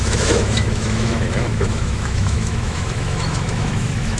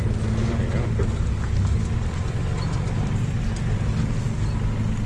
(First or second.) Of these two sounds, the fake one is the first